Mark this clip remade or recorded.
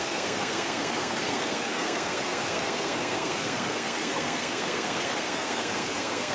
remade